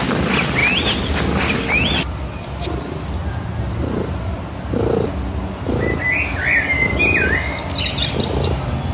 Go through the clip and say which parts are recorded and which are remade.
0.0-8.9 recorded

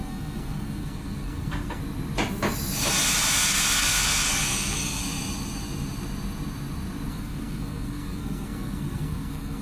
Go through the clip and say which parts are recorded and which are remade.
0.0-1.8 remade; 1.8-3.3 recorded; 3.3-5.0 remade; 5.0-7.1 recorded; 7.1-9.6 remade

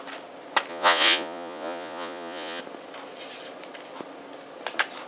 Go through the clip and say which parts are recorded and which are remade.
0.0-0.7 recorded; 0.7-2.6 remade; 2.6-5.1 recorded

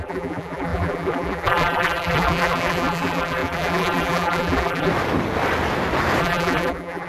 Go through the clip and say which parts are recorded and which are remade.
0.0-4.9 remade; 4.9-6.2 recorded; 6.2-7.1 remade

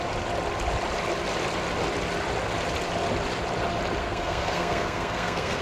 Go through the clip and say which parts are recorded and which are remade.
0.0-4.0 recorded; 4.0-5.6 remade

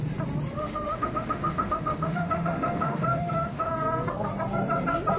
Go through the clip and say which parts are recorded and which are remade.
0.0-0.6 recorded; 0.6-3.7 remade; 3.7-5.2 recorded